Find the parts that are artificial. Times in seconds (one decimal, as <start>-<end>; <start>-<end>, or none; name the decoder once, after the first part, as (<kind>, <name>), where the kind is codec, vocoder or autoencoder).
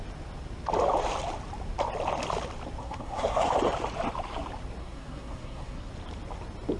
2.8-3.5 (codec, SNAC); 4.8-5.9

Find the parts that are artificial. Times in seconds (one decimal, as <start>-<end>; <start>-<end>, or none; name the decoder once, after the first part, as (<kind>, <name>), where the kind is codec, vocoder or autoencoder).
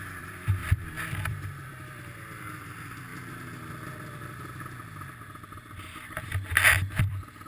0.0-3.1 (vocoder, BigVGAN v2); 7.0-7.5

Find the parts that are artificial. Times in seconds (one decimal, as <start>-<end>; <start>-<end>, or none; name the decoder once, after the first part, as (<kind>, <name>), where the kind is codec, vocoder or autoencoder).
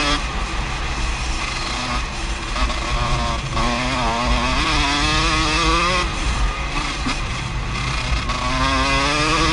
6.1-7.4 (vocoder, BigVGAN v2)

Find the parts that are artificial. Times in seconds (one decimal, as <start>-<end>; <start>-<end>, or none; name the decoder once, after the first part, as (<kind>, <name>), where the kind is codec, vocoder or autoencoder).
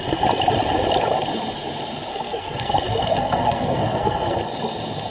2.1-4.4 (codec, SNAC)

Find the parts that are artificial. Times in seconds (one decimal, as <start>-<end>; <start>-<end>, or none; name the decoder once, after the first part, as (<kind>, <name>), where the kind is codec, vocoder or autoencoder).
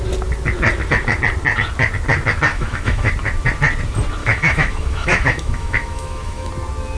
2.5-3.1 (autoencoder, DAC-VAE); 4.2-6.5